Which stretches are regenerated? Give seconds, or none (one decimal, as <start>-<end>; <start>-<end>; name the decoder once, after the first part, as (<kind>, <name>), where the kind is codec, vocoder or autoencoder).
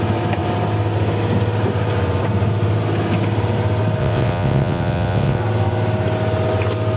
4.0-5.4 (vocoder, WaveNeXt)